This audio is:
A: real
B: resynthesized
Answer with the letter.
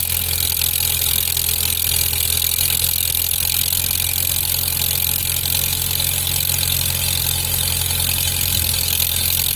A